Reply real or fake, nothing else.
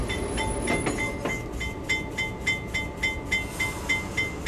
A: real